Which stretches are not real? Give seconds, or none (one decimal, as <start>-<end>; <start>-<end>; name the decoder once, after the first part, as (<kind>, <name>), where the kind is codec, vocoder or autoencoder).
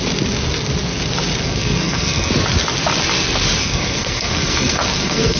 1.4-2.3 (codec, SNAC); 3.6-5.4